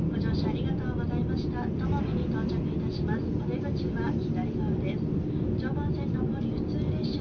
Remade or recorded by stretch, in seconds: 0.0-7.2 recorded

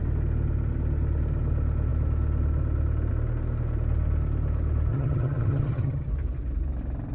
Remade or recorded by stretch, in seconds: 0.0-4.9 recorded; 4.9-6.1 remade; 6.1-7.1 recorded